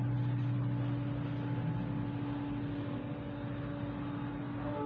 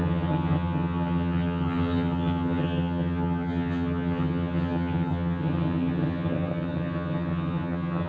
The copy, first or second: second